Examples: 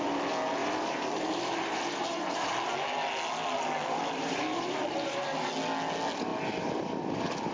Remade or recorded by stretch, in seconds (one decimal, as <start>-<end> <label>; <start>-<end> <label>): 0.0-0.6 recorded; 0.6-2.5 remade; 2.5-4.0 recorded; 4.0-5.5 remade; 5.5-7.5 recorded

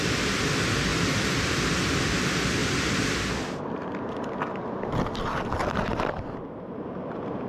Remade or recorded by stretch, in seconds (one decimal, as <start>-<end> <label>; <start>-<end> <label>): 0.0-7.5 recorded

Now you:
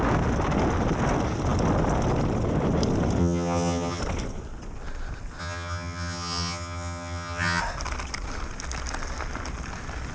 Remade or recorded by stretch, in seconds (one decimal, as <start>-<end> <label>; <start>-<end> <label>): 0.0-3.2 recorded; 3.2-4.0 remade; 4.0-5.4 recorded; 5.4-7.6 remade; 7.6-10.1 recorded

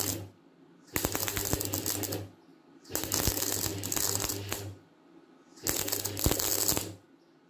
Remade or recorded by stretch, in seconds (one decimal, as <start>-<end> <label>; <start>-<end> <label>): 0.0-7.5 recorded

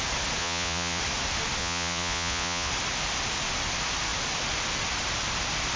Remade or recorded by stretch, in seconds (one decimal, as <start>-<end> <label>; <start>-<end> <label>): 0.0-0.4 recorded; 0.4-1.0 remade; 1.0-1.6 recorded; 1.6-2.7 remade; 2.7-5.8 recorded

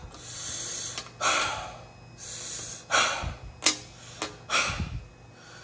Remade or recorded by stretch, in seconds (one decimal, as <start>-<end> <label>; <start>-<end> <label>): 0.0-4.5 recorded; 4.5-5.0 remade; 5.0-5.6 recorded